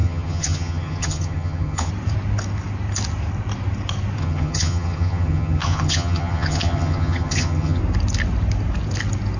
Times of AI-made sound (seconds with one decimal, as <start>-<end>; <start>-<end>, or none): 0.0-1.9; 4.2-7.8